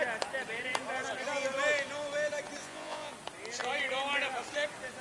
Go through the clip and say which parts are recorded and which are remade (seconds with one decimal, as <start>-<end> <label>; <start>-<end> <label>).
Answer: 0.0-2.6 recorded; 2.6-3.1 remade; 3.1-5.0 recorded